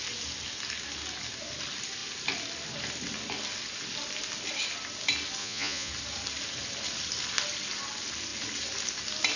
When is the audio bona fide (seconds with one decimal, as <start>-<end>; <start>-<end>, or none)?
0.0-5.4; 5.9-9.4